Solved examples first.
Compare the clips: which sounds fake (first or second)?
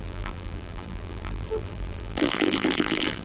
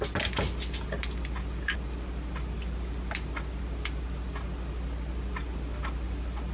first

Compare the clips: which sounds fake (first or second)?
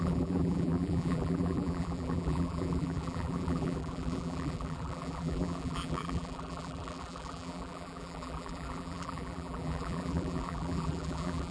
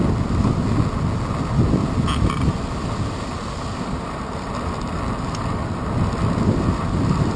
first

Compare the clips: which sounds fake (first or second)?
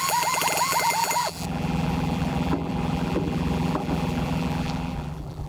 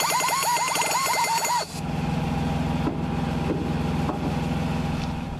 first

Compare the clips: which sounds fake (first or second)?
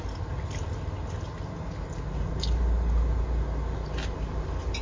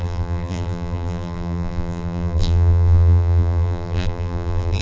second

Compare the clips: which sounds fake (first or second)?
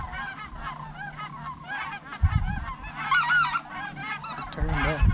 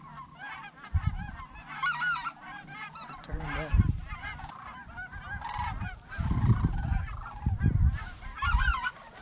second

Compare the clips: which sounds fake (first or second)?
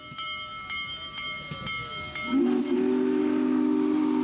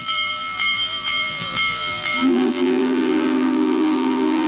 second